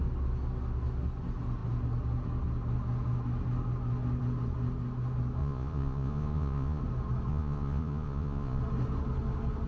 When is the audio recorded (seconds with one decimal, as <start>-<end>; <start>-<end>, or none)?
0.0-5.4; 6.8-7.3; 8.6-9.7